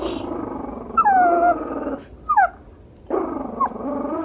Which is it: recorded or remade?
recorded